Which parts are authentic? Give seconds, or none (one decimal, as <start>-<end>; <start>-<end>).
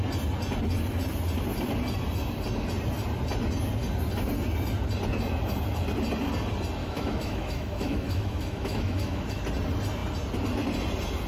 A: 0.0-6.8; 9.4-11.3